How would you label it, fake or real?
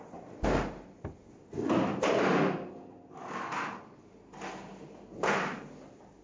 real